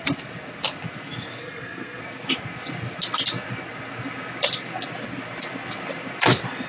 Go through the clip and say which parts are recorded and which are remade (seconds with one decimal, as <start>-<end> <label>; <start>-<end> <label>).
0.0-1.4 recorded; 1.4-2.0 remade; 2.0-6.7 recorded